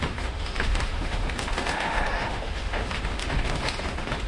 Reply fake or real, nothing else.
fake